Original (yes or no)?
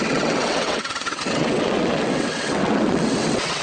no